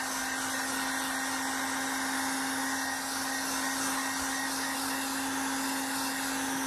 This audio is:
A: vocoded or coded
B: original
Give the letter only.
B